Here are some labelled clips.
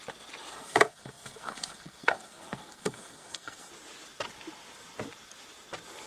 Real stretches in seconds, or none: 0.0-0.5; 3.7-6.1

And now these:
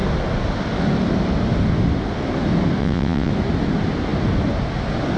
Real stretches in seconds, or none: 0.0-2.8; 3.3-5.2

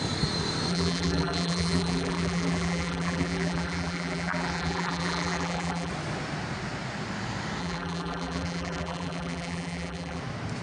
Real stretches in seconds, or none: 0.0-0.7; 5.9-7.6; 10.2-10.6

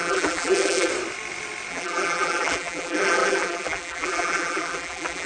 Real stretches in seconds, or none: 0.9-1.7

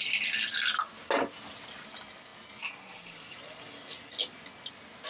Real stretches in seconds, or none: 0.0-5.1

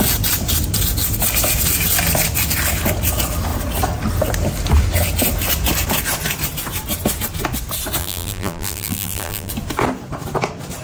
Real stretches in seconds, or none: 0.0-8.0; 9.5-10.8